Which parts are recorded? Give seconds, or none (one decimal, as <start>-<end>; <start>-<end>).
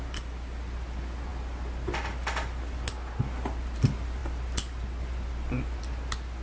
0.0-6.4